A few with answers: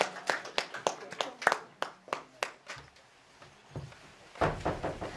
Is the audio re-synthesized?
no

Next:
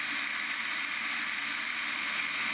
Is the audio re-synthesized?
no